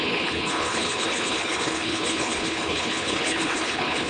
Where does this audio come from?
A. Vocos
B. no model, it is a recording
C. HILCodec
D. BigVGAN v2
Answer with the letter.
C